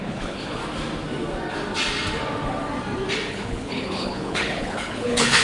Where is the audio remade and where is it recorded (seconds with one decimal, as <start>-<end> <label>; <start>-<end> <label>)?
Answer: 0.0-0.6 remade; 0.6-3.3 recorded; 3.3-5.4 remade